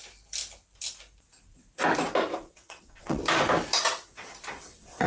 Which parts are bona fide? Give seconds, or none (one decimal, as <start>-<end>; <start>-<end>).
0.0-2.5; 3.2-4.5